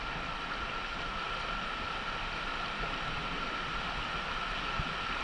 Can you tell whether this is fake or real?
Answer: real